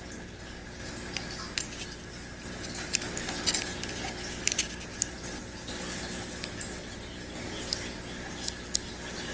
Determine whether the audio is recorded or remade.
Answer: recorded